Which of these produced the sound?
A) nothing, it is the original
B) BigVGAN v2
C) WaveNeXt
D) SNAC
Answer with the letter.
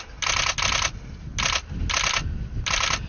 A